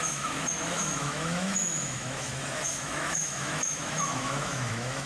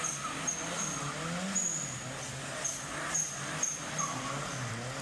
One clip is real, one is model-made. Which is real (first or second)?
second